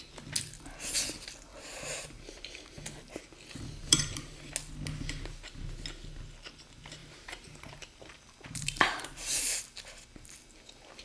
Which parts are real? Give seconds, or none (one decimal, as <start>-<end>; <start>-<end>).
0.0-3.8; 4.5-7.0; 9.6-11.0